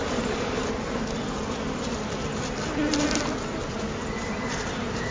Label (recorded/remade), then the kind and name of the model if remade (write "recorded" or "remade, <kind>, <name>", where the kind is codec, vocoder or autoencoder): recorded